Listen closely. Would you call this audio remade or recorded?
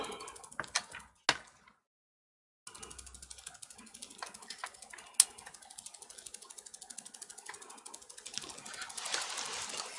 recorded